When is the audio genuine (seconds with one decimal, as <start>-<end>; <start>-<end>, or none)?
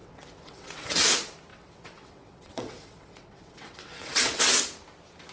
1.0-1.5; 4.4-5.3